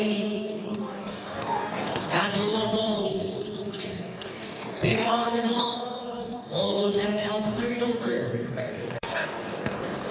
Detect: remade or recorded remade